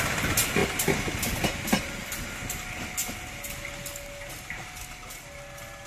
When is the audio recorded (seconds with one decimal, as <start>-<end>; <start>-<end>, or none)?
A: 0.0-5.9